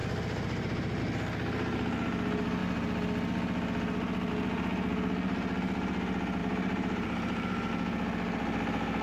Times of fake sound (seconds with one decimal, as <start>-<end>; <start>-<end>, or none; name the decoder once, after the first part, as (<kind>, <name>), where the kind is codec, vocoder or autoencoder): 0.0-1.0 (vocoder, BigVGAN v2); 6.4-7.7